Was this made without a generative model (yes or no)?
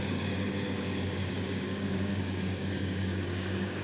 no